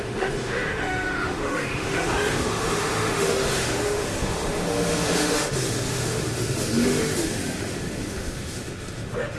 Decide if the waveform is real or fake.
fake